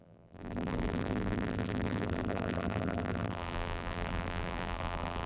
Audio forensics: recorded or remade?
remade